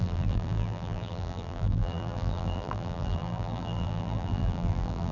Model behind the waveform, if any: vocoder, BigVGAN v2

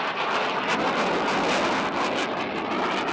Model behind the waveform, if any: none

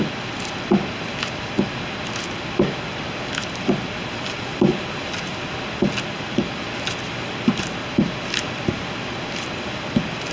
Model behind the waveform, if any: none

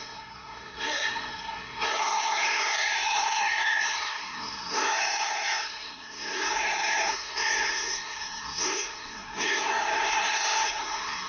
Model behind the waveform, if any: codec, SNAC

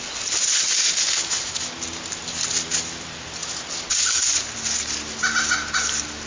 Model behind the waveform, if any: none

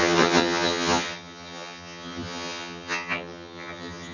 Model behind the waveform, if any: vocoder, HiFi-GAN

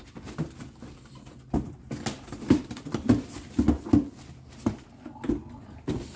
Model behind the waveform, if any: none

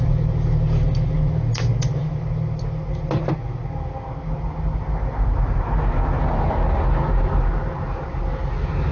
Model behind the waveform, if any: none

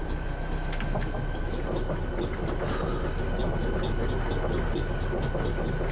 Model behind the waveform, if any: none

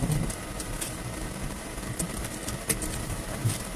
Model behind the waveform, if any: vocoder, BigVGAN v2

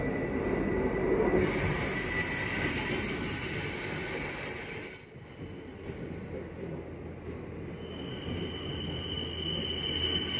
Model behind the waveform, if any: none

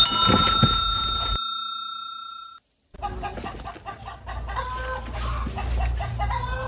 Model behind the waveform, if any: none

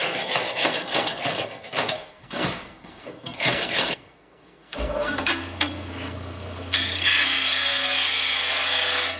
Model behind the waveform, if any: codec, SNAC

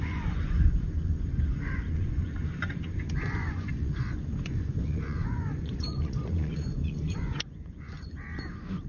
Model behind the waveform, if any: vocoder, Vocos